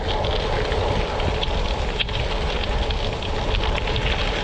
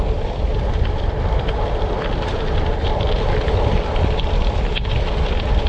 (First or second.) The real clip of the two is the first